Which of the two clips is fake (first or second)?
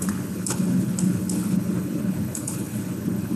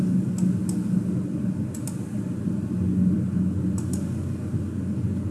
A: first